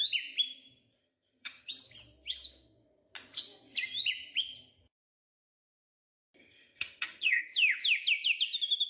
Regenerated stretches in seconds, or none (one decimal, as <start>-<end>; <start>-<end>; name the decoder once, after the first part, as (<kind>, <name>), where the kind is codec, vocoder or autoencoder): 1.0-1.7 (vocoder, HiFi-GAN); 6.4-7.4